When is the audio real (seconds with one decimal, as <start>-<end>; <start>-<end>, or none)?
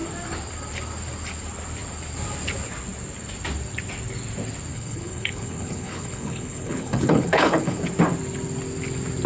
0.0-4.7; 7.8-9.3